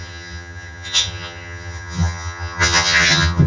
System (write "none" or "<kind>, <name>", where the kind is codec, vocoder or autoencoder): vocoder, HiFi-GAN